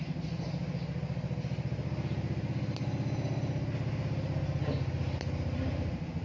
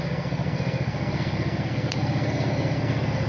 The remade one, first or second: second